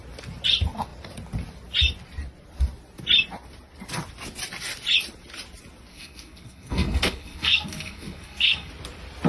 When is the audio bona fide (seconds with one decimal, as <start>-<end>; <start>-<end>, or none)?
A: 0.0-5.9; 8.7-9.3